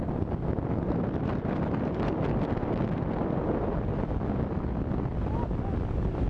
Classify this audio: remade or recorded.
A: recorded